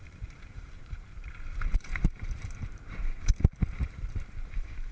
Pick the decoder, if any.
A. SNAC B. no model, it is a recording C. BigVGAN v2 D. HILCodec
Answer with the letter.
C